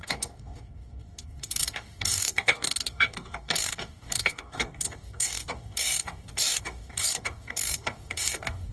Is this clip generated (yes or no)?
yes